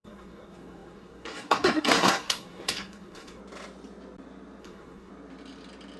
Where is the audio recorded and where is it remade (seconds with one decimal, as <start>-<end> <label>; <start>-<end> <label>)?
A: 0.0-3.4 remade; 3.4-4.6 recorded; 4.6-5.1 remade; 5.1-6.0 recorded